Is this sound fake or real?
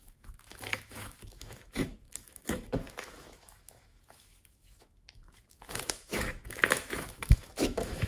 fake